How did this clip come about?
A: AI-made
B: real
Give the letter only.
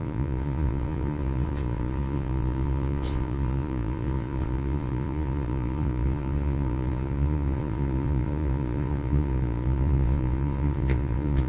A